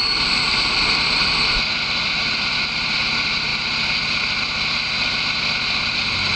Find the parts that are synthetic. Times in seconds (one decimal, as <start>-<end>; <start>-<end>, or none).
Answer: none